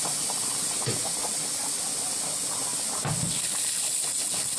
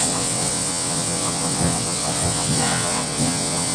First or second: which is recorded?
first